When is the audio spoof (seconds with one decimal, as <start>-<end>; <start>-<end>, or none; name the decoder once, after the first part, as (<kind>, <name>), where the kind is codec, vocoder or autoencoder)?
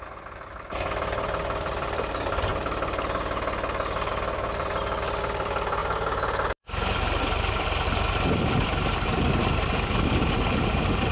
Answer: 0.0-2.5 (vocoder, BigVGAN v2); 4.1-11.1